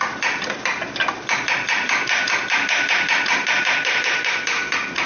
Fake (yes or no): yes